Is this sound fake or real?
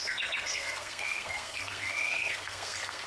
fake